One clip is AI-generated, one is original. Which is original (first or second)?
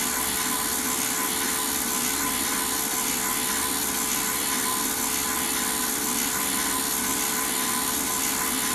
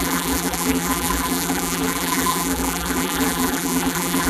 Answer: first